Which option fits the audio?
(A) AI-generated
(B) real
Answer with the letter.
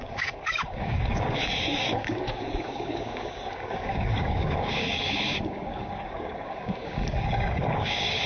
A